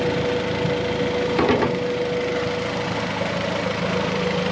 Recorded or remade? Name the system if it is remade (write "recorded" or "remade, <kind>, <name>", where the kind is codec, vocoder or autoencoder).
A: recorded